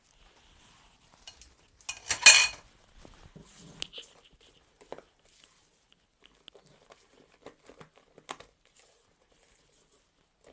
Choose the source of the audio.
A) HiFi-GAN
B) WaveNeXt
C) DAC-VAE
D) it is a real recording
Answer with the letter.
D